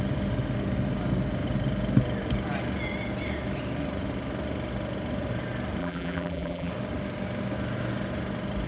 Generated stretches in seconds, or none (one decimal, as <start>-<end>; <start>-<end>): 5.8-6.7